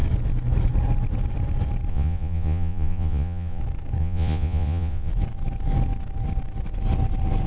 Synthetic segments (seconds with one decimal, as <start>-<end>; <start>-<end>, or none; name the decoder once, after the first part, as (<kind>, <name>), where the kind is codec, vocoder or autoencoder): 1.9-3.6 (vocoder, Vocos); 4.0-5.1